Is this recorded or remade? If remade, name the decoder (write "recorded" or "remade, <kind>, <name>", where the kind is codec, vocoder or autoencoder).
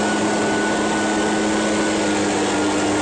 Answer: recorded